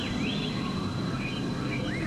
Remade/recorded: recorded